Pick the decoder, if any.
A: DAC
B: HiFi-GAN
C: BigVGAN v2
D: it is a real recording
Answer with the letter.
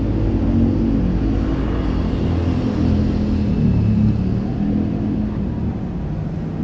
D